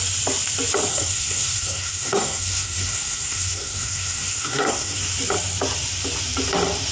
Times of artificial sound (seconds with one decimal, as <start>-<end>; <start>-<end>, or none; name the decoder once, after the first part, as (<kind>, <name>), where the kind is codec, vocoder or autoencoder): 0.9-5.0 (codec, SNAC)